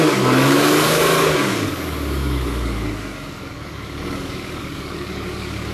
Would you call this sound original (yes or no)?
no